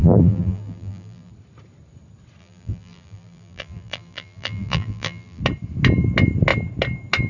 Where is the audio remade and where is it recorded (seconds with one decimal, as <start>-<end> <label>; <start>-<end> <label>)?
0.0-1.3 remade; 1.3-2.4 recorded; 2.4-5.4 remade; 5.4-7.3 recorded